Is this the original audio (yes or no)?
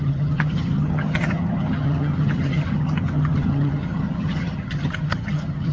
no